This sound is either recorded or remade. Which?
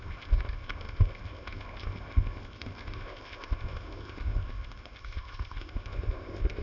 remade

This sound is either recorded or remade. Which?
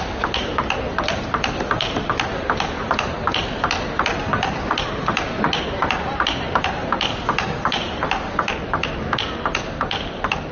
recorded